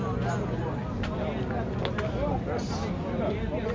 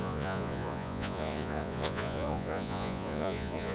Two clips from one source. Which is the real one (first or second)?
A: first